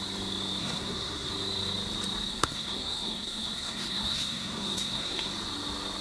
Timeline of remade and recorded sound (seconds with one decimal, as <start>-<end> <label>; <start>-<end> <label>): 0.0-0.6 recorded; 0.6-1.3 remade; 1.3-2.3 recorded; 2.3-5.3 remade; 5.3-6.0 recorded